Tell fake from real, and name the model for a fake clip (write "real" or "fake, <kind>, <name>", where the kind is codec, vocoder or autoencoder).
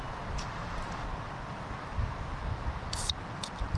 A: real